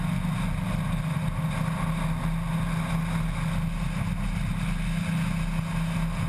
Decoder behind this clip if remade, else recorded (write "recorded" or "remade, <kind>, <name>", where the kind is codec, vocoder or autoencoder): recorded